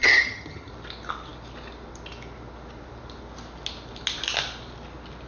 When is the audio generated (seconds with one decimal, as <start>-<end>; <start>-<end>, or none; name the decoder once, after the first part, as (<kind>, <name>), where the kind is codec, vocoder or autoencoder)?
0.0-0.7 (vocoder, HiFi-GAN)